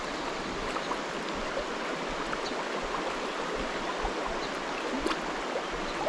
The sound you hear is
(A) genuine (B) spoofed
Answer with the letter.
A